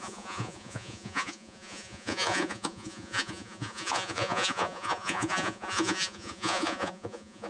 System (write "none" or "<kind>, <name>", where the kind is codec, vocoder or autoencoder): vocoder, Vocos